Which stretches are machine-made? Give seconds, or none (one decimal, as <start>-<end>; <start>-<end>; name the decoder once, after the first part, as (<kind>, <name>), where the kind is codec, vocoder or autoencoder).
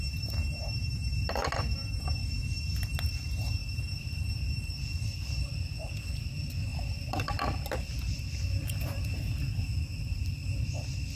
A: 3.6-4.3 (vocoder, BigVGAN v2); 6.7-11.2